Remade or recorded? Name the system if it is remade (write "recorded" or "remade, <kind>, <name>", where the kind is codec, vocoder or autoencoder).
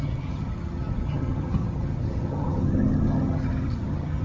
remade, vocoder, HiFi-GAN